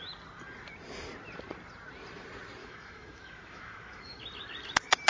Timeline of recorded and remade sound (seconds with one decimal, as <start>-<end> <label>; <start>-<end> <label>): 0.0-2.6 recorded; 2.6-4.2 remade; 4.2-5.1 recorded